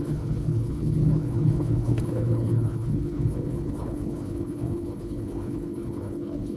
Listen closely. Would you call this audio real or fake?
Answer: fake